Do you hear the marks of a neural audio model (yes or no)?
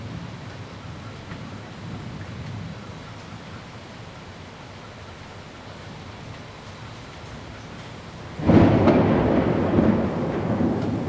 no